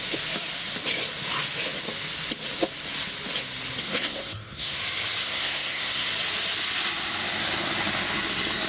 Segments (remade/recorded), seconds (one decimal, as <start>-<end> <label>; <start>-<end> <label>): 0.0-3.8 recorded; 3.8-4.8 remade; 4.8-5.2 recorded; 5.2-6.1 remade; 6.1-8.7 recorded